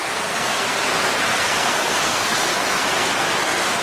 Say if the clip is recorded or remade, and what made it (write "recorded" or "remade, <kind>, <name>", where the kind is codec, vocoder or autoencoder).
remade, codec, SNAC